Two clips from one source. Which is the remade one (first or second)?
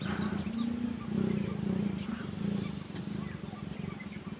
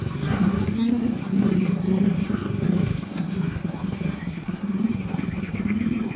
second